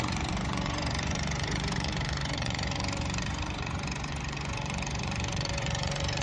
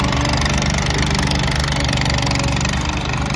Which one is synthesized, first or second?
first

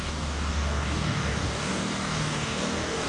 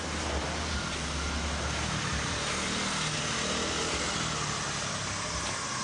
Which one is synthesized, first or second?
first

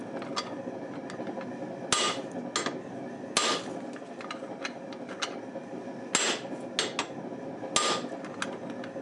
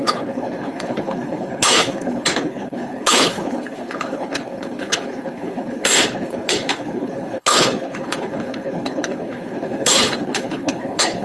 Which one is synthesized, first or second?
second